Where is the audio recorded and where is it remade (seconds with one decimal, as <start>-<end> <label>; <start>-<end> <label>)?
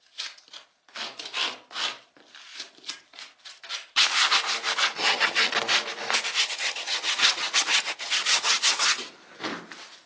0.0-5.0 recorded; 5.0-5.5 remade; 5.5-6.4 recorded; 6.4-9.0 remade; 9.0-10.1 recorded